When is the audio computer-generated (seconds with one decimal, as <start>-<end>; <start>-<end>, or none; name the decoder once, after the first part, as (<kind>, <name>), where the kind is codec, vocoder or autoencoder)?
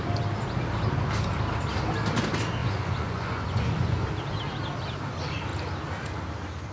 2.6-4.1 (vocoder, Vocos)